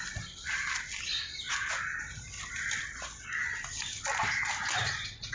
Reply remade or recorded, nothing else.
recorded